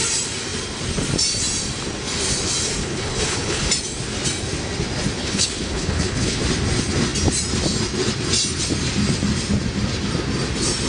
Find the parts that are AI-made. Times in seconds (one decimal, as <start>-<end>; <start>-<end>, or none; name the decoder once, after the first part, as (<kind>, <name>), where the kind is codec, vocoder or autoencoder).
2.8-3.7 (codec, HILCodec); 5.2-6.4